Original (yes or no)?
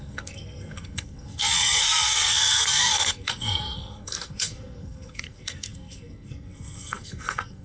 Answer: no